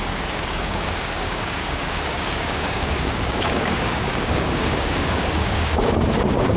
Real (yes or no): no